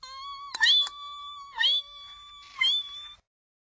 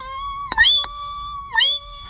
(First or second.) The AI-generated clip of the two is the second